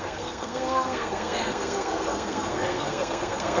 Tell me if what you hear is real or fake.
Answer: fake